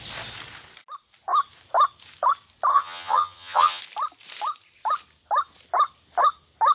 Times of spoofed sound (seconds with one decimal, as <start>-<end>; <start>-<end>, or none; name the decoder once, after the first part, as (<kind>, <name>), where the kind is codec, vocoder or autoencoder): 2.7-3.8 (vocoder, HiFi-GAN)